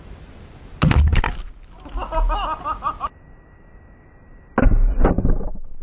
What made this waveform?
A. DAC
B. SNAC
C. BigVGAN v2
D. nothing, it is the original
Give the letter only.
D